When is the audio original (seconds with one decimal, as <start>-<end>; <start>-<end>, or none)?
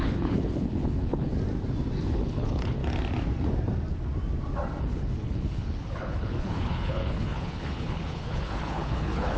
1.3-2.0; 2.8-4.8